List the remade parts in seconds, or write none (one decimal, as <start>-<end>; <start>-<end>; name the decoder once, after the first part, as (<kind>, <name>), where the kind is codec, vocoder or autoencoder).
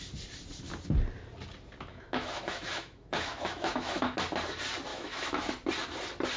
1.9-4.2 (autoencoder, DAC-VAE); 4.9-5.5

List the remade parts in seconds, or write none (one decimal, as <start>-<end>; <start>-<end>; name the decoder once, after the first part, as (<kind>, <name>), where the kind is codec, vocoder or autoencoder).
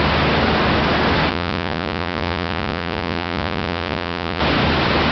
1.3-4.4 (vocoder, Vocos)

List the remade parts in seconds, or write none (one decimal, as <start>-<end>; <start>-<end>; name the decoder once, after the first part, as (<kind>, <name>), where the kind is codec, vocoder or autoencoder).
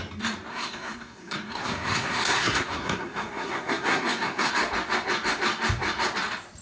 0.5-4.5 (codec, SNAC)